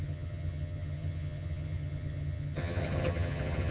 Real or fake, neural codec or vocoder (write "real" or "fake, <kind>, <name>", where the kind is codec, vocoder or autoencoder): fake, vocoder, HiFi-GAN